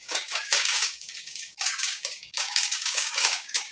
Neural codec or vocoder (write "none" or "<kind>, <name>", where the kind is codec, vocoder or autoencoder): codec, DAC